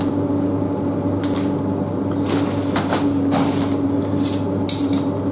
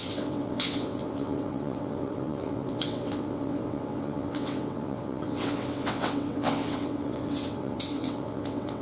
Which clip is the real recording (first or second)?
first